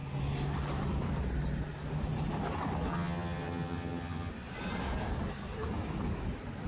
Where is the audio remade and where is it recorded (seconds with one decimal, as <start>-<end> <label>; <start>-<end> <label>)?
0.0-2.9 recorded; 2.9-4.3 remade; 4.3-6.7 recorded